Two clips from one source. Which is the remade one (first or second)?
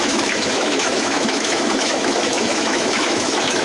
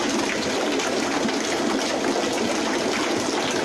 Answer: first